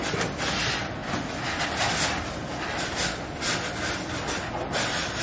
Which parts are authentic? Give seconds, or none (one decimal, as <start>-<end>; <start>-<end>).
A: 0.0-5.2